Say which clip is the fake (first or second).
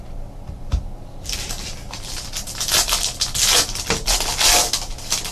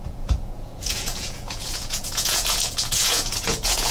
second